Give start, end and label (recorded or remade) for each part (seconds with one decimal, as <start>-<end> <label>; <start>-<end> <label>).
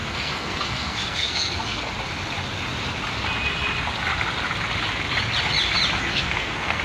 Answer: 0.0-1.9 remade; 1.9-6.1 recorded; 6.1-6.8 remade